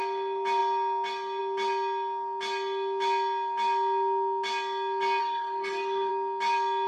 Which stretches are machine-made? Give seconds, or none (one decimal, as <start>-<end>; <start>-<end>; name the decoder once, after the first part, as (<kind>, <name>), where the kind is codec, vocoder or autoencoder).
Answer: 5.2-6.1 (codec, DAC)